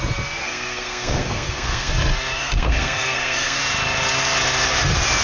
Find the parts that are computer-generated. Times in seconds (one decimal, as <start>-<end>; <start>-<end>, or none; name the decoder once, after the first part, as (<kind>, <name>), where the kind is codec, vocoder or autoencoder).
0.4-1.9 (codec, SNAC); 2.3-3.6